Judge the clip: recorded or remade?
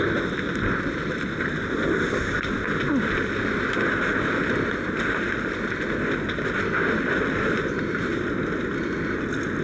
recorded